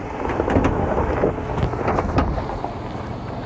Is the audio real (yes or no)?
yes